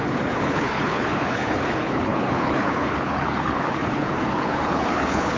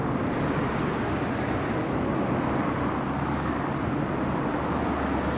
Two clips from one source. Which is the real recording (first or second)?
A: second